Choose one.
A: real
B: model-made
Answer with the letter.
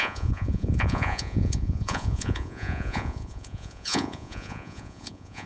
B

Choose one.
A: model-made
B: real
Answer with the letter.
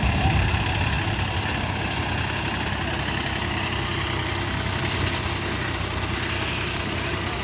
B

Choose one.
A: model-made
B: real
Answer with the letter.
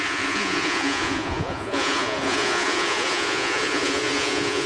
A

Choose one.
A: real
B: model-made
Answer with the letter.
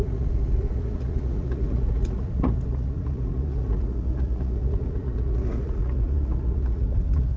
B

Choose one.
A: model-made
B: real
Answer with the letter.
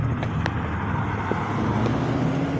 B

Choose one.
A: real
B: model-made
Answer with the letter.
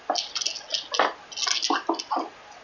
A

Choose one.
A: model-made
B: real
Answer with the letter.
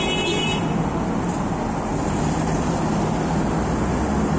B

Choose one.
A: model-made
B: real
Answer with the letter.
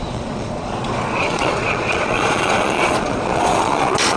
A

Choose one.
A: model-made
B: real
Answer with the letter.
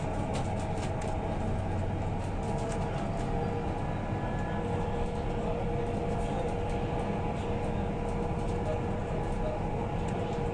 B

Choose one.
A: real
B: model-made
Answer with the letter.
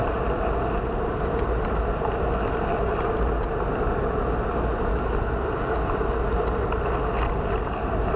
A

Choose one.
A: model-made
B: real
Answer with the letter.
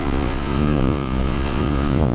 A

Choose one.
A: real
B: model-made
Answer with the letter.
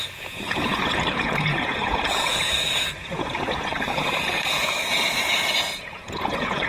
B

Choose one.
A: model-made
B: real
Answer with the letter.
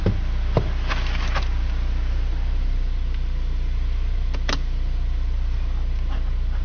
B